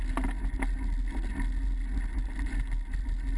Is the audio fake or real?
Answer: real